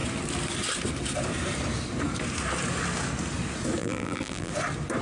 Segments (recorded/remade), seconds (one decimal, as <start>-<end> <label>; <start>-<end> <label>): 0.0-3.8 recorded; 3.8-4.5 remade; 4.5-5.0 recorded